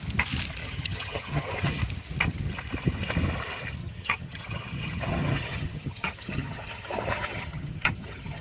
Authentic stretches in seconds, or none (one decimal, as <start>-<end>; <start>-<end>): 0.0-0.6; 1.8-3.8